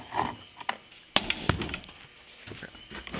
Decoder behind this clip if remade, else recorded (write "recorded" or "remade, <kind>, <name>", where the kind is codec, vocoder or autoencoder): recorded